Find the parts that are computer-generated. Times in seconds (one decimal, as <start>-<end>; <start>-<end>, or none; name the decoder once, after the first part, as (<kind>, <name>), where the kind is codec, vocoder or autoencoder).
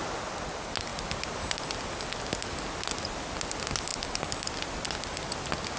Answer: none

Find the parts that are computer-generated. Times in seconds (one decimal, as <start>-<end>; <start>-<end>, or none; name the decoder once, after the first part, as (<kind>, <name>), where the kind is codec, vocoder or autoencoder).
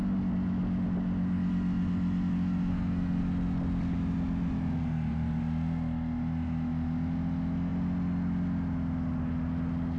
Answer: 2.7-3.2 (codec, SNAC)